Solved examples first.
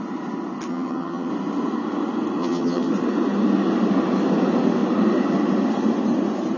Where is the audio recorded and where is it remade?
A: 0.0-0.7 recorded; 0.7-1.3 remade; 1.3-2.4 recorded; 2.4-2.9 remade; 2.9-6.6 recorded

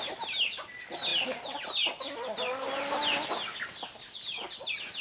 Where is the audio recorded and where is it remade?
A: 0.0-5.0 recorded

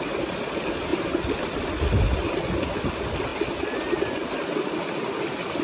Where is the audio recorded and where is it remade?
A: 0.0-5.6 recorded

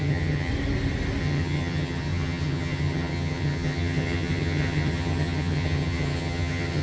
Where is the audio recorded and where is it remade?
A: 0.0-0.5 remade; 0.5-1.2 recorded; 1.2-6.8 remade

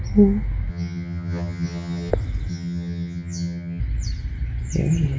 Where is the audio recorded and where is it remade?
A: 0.0-0.7 recorded; 0.7-2.1 remade; 2.1-2.5 recorded; 2.5-3.8 remade; 3.8-5.2 recorded

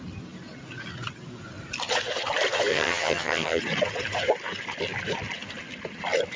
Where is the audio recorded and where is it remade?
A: 0.0-2.7 recorded; 2.7-3.6 remade; 3.6-6.4 recorded

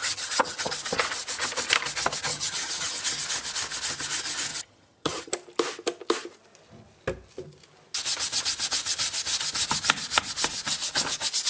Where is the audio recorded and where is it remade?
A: 0.0-0.7 remade; 0.7-2.3 recorded; 2.3-3.0 remade; 3.0-4.5 recorded; 4.5-5.3 remade; 5.3-11.5 recorded

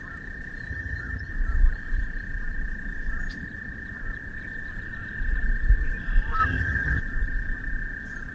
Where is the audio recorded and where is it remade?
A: 0.0-0.7 recorded; 0.7-1.3 remade; 1.3-6.4 recorded; 6.4-7.0 remade; 7.0-8.3 recorded